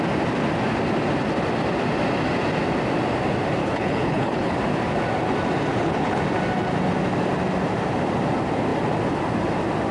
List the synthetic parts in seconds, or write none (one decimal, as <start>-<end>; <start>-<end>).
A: 3.6-4.6; 5.7-6.2